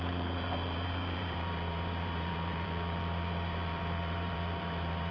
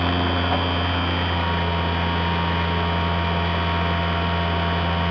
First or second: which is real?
second